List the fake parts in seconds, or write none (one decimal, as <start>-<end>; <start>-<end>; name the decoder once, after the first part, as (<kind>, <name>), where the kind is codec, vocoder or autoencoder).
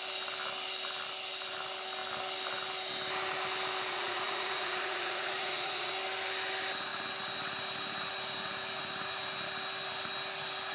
3.9-5.9 (vocoder, Vocos)